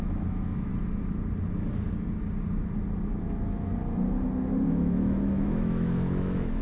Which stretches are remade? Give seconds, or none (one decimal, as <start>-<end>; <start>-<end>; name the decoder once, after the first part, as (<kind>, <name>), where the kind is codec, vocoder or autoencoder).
0.0-0.7 (autoencoder, DAC-VAE); 3.2-3.7; 4.7-6.6